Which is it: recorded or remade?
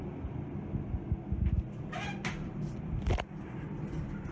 recorded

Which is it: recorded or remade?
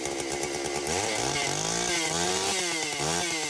recorded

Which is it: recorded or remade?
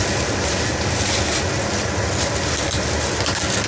recorded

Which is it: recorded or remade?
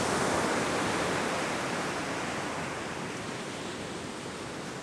recorded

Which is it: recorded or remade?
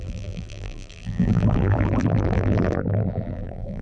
remade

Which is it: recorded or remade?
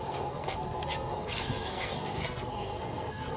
remade